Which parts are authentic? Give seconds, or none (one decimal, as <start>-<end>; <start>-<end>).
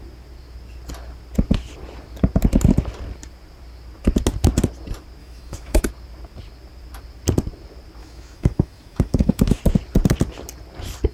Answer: 0.0-5.2; 5.8-8.0; 9.6-11.1